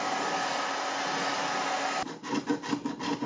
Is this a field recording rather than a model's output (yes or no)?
yes